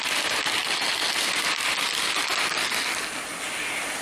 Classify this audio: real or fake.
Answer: real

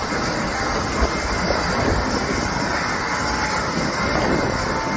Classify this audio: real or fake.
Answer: real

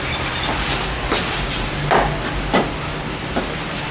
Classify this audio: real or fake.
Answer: real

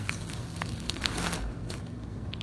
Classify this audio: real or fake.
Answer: fake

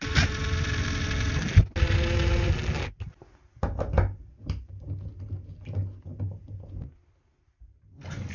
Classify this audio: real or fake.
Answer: real